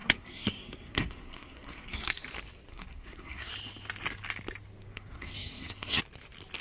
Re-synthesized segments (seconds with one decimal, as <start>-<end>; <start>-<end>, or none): 0.0-2.2; 2.7-3.5; 4.9-6.0